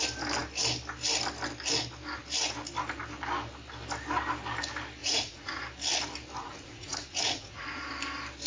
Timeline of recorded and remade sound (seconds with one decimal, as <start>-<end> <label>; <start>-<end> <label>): 0.0-5.0 recorded; 5.0-5.6 remade; 5.6-6.4 recorded; 6.4-7.9 remade; 7.9-8.5 recorded